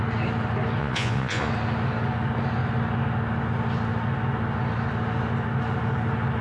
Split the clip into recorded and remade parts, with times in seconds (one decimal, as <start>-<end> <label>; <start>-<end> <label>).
0.0-0.8 recorded; 0.8-1.5 remade; 1.5-6.4 recorded